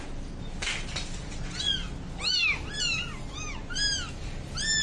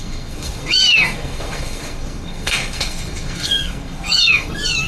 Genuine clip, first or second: first